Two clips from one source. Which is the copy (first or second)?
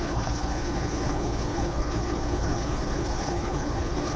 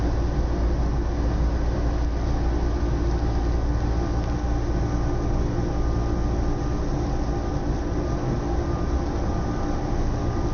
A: first